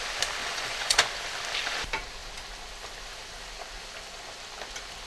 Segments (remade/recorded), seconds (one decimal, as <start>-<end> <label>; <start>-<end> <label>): 0.0-0.4 recorded; 0.4-1.1 remade; 1.1-5.1 recorded